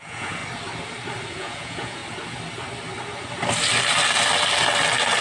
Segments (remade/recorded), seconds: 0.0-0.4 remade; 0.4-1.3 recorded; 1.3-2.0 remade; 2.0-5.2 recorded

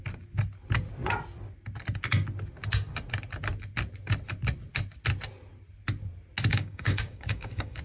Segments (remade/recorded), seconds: 0.0-6.5 recorded; 6.5-7.8 remade

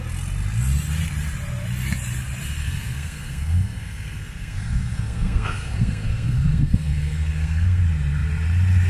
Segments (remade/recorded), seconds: 0.0-2.6 recorded; 2.6-7.8 remade; 7.8-8.9 recorded

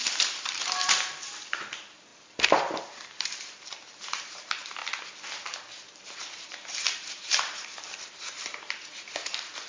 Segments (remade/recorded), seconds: 0.0-4.8 remade; 4.8-5.9 recorded; 5.9-9.7 remade

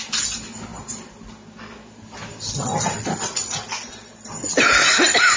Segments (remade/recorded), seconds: 0.0-5.4 recorded

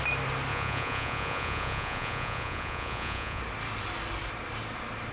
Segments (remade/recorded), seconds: 0.0-0.5 recorded; 0.5-3.4 remade; 3.4-5.1 recorded

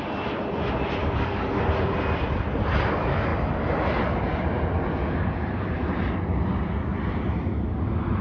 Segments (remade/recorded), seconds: 0.0-1.0 recorded; 1.0-1.6 remade; 1.6-8.2 recorded